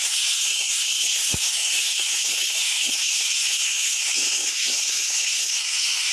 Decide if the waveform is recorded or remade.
remade